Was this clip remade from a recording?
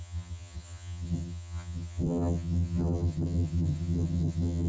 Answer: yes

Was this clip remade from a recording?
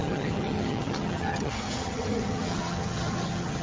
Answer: yes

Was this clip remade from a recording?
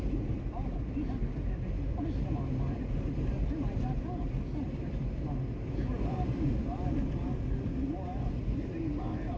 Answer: no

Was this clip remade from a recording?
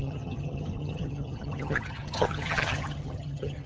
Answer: yes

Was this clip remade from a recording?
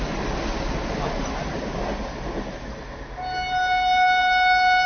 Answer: no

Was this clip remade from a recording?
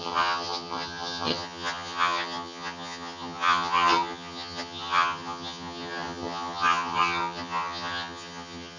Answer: yes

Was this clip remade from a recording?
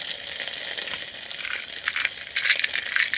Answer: no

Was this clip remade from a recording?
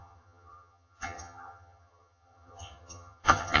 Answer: yes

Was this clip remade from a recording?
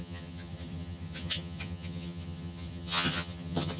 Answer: yes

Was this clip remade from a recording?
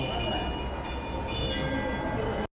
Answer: no